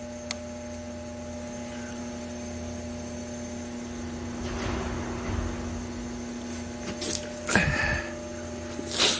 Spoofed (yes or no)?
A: no